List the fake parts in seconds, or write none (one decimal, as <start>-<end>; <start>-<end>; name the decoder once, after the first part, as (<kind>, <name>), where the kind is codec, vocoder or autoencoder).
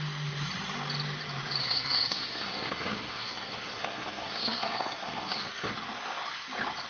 1.6-5.7 (codec, SNAC)